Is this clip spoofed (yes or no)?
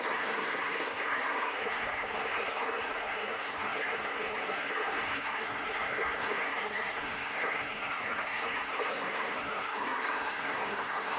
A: yes